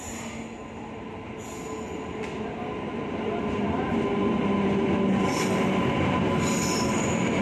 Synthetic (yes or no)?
no